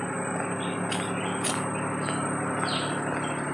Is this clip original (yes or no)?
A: yes